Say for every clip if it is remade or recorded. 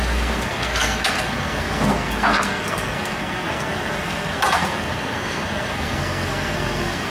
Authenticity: remade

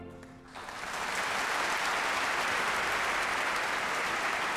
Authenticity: recorded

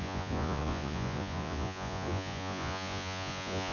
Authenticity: remade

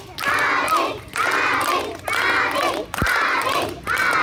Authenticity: recorded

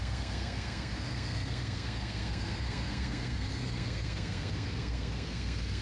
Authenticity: remade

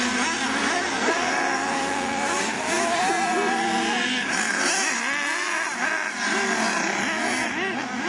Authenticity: recorded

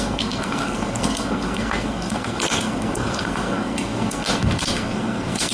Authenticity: remade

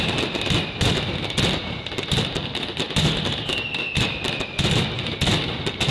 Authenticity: recorded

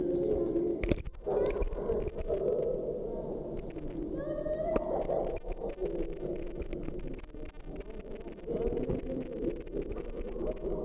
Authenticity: recorded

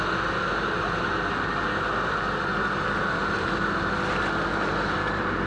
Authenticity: recorded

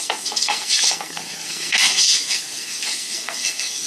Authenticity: remade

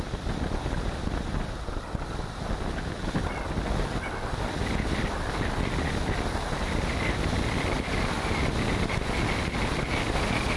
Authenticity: recorded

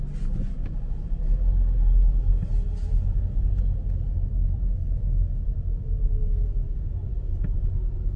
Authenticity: recorded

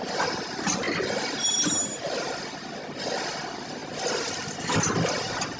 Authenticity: recorded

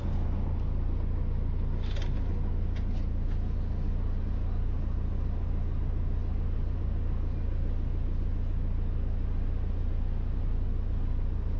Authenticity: recorded